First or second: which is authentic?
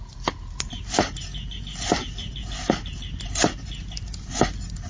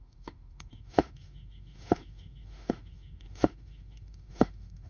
first